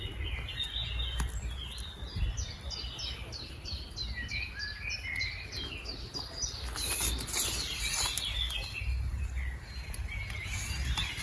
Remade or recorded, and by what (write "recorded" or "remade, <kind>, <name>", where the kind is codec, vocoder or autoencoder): recorded